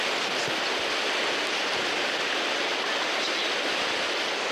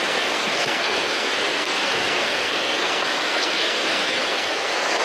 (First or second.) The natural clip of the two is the first